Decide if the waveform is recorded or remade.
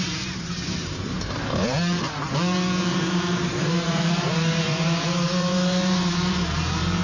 remade